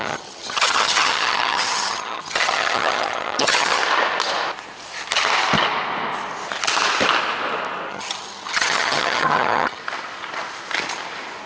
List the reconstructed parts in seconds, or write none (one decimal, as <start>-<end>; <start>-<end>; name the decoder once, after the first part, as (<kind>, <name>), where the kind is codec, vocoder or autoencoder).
0.0-3.8 (vocoder, HiFi-GAN); 7.9-9.8